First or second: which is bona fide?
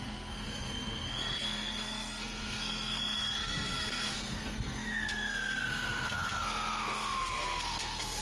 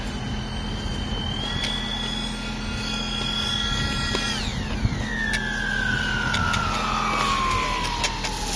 second